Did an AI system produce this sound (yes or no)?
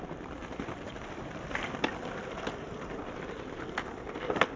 no